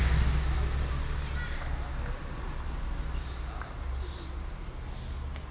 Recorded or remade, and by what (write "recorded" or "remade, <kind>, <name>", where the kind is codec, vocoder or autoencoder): recorded